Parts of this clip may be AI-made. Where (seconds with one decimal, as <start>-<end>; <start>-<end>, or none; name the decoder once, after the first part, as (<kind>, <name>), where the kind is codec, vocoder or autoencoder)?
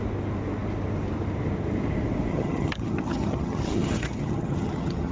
2.3-5.1 (vocoder, HiFi-GAN)